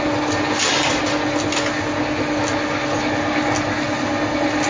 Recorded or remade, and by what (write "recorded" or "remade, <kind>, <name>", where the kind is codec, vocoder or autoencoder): recorded